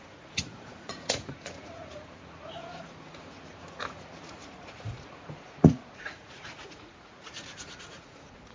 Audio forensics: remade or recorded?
remade